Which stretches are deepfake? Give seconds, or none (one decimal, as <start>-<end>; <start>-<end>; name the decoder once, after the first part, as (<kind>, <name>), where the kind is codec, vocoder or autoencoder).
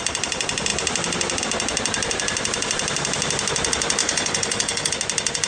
4.0-4.9 (codec, DAC)